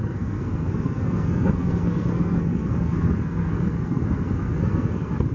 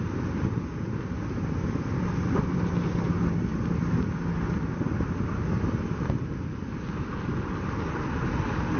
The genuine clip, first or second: second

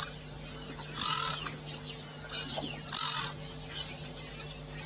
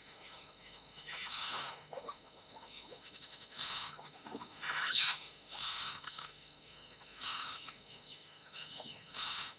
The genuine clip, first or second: first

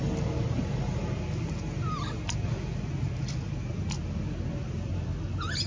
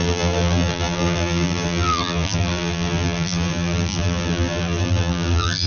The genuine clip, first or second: first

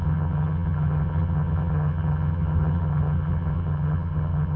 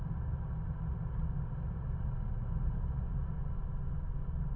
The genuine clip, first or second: second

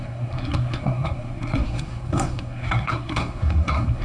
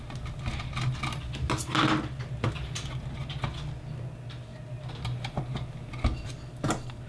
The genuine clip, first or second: second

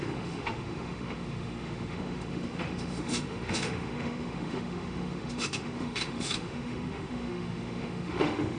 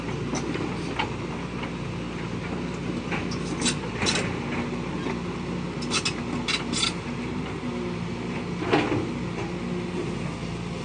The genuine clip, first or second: second